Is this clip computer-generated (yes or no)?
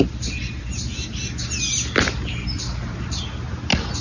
no